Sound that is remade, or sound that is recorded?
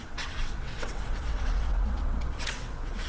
remade